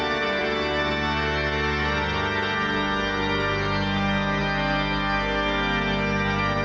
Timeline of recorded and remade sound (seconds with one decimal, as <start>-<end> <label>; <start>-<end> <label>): 0.0-6.6 recorded